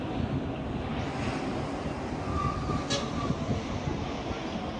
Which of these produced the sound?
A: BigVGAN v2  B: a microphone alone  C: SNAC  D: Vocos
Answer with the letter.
B